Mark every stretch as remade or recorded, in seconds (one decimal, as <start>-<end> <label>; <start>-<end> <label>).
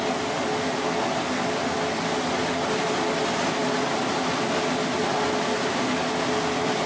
0.0-6.9 recorded